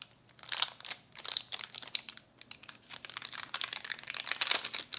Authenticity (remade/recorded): recorded